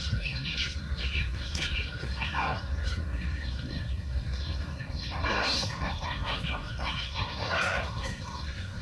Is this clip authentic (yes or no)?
no